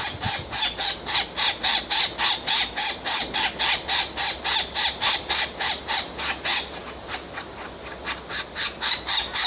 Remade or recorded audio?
recorded